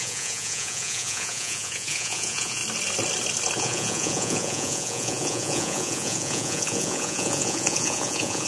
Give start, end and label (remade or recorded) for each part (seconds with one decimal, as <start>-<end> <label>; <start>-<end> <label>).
0.0-2.6 remade; 2.6-3.6 recorded; 3.6-8.5 remade